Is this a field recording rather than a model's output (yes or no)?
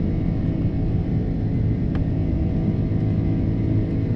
yes